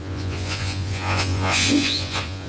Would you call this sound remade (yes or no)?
yes